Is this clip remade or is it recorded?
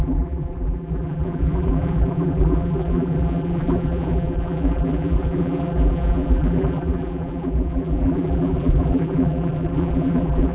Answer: remade